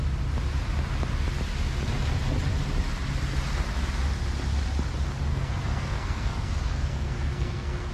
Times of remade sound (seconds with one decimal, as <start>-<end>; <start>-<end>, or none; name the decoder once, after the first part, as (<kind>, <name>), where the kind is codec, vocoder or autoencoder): 5.3-7.9 (codec, SNAC)